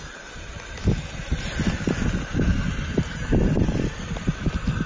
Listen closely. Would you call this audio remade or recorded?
recorded